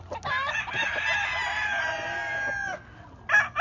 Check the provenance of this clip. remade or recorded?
recorded